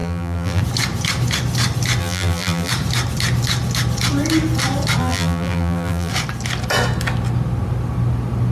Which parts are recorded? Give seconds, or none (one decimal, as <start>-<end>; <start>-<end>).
0.6-2.0; 2.7-5.0; 6.1-8.5